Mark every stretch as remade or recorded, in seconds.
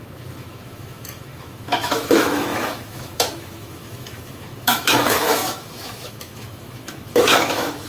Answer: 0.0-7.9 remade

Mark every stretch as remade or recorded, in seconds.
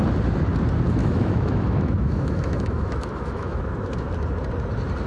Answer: 0.0-1.0 recorded; 1.0-4.1 remade; 4.1-5.1 recorded